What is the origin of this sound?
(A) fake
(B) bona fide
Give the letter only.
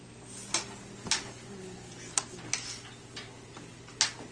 B